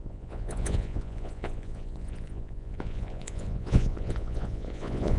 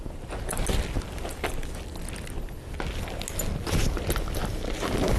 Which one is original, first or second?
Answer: second